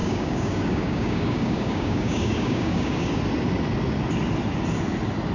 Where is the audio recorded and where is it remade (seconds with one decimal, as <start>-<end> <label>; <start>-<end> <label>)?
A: 0.0-3.2 remade; 3.2-5.3 recorded